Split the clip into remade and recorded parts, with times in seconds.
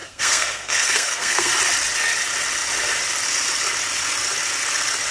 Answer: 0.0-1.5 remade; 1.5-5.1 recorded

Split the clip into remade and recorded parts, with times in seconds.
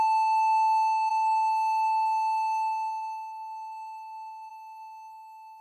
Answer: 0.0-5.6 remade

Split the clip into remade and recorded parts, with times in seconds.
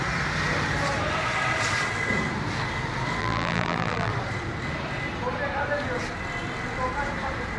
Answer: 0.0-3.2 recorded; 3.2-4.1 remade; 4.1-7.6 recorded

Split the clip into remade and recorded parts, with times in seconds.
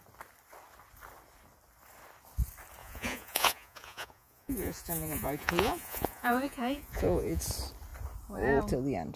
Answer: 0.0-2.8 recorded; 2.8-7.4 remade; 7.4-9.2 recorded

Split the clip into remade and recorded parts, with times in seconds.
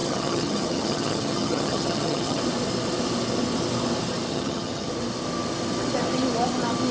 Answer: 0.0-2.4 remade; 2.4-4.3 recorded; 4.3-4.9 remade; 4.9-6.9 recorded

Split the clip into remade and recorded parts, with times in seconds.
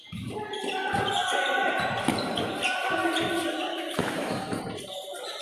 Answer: 0.0-3.7 recorded; 3.7-4.6 remade; 4.6-5.4 recorded